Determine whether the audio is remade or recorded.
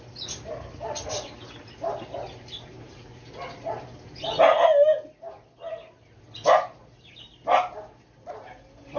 recorded